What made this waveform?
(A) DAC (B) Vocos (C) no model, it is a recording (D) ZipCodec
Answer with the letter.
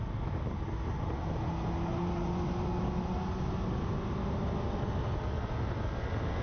C